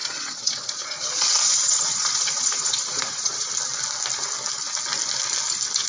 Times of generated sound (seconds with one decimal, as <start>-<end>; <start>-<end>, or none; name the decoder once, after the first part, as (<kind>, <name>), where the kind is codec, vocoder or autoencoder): 0.0-3.5 (vocoder, Vocos)